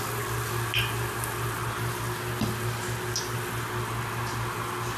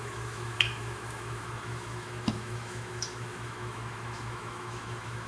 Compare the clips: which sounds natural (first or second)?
first